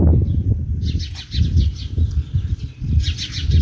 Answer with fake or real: fake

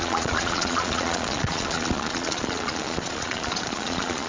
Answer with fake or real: fake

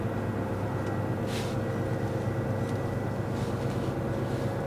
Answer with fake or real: real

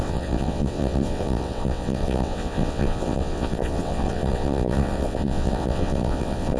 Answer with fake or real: fake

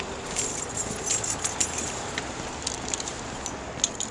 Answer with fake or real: real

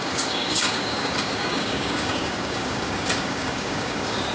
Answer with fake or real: fake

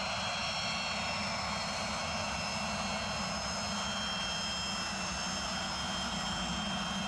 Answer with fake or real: real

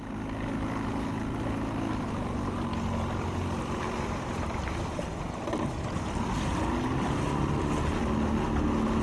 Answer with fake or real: real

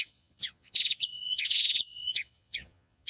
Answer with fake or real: fake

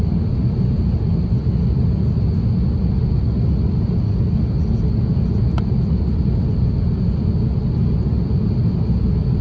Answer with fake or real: real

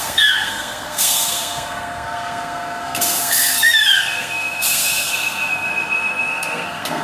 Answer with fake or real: fake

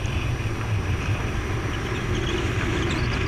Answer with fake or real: real